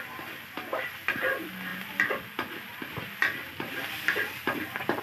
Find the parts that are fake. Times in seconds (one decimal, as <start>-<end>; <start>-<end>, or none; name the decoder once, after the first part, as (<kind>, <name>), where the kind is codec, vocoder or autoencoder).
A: none